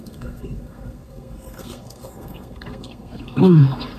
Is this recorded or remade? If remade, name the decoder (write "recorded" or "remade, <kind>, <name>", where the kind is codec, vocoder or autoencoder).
remade, codec, SNAC